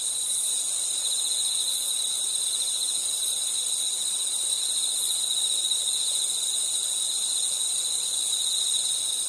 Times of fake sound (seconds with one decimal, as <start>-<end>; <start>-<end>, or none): none